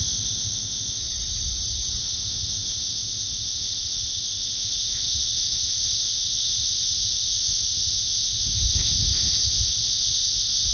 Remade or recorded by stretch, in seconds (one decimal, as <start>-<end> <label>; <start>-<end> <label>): 0.0-1.0 remade; 1.0-2.0 recorded; 2.0-10.7 remade